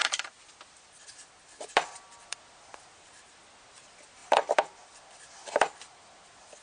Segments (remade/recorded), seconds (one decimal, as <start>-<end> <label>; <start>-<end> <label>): 0.0-6.6 recorded